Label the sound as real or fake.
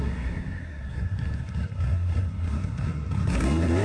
fake